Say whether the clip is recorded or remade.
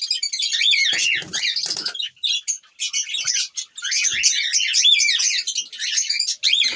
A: recorded